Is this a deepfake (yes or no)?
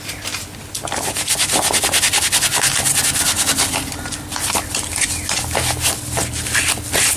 no